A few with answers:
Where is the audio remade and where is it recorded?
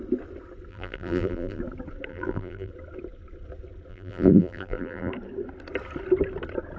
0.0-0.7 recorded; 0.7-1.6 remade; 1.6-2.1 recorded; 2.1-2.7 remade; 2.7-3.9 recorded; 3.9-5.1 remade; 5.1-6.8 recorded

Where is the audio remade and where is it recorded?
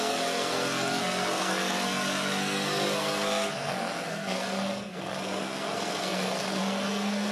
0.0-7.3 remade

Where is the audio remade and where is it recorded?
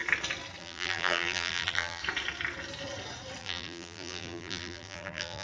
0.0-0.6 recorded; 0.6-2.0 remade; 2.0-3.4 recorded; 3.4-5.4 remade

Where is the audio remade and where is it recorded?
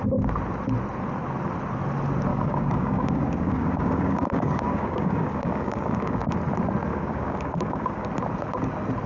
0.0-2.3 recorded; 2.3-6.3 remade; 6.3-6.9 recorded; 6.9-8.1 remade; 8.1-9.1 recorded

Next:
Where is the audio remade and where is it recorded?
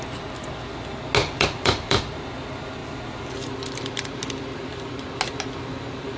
0.0-1.2 recorded; 1.2-2.0 remade; 2.0-2.8 recorded; 2.8-4.1 remade; 4.1-6.2 recorded